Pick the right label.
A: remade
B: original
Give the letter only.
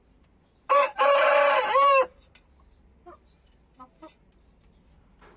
B